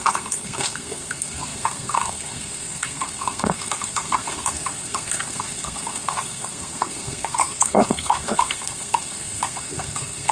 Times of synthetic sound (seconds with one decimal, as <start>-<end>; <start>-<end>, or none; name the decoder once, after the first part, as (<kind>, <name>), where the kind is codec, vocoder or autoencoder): 0.0-10.3 (codec, SNAC)